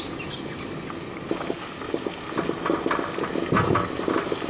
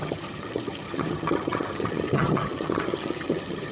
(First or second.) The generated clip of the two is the second